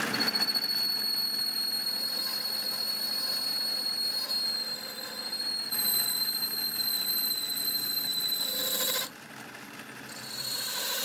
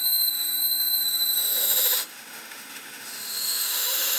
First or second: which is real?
first